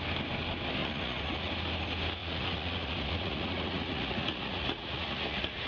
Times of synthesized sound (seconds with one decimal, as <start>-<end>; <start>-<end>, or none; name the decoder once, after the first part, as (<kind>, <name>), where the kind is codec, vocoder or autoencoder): 0.8-1.5 (vocoder, Vocos); 2.2-5.7